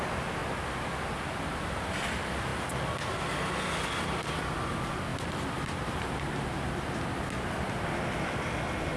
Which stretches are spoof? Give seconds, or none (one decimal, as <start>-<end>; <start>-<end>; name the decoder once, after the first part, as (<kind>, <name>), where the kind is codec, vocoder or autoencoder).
none